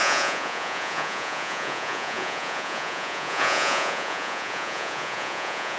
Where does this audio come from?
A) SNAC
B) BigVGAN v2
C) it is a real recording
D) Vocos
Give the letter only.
D